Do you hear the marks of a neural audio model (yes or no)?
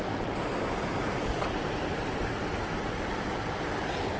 no